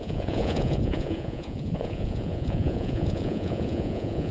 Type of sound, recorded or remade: remade